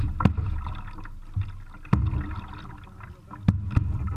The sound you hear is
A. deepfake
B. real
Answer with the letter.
B